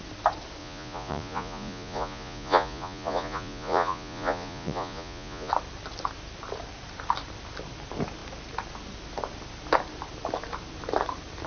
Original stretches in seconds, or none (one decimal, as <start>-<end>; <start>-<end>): 0.0-0.6; 5.5-11.5